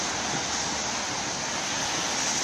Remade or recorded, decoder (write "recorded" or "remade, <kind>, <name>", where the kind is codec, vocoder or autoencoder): recorded